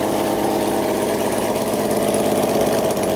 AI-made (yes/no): no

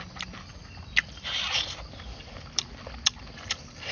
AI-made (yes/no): no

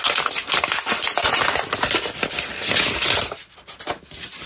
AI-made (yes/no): no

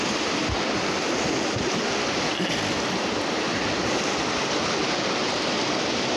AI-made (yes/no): no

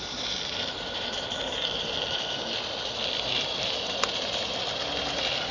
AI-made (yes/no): yes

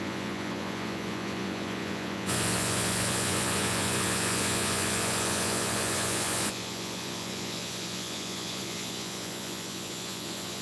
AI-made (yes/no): yes